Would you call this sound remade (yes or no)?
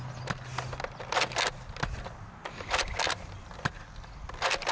no